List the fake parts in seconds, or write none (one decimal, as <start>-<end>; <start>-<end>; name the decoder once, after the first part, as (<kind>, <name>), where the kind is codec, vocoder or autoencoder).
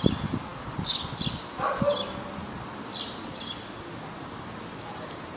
none